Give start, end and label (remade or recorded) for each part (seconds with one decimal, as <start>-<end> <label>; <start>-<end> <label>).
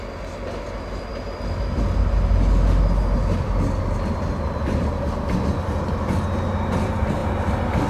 0.0-7.9 recorded